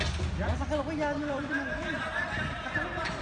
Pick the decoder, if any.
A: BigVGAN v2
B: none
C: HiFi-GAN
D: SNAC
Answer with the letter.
B